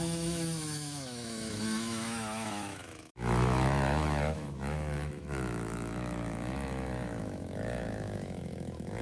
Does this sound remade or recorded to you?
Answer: remade